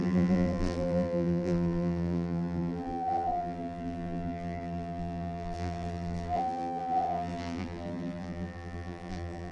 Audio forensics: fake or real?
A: fake